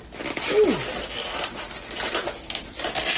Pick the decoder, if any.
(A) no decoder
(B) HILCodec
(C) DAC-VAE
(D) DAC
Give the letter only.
A